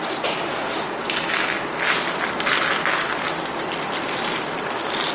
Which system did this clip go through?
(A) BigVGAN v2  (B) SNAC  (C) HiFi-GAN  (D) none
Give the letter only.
D